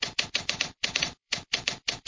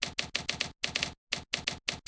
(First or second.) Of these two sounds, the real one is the second